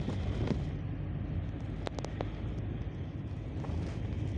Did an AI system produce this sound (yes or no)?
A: no